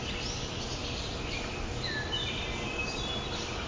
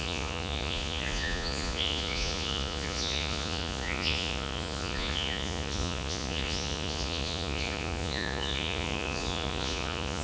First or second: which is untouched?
first